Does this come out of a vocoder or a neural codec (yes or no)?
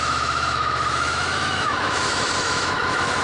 yes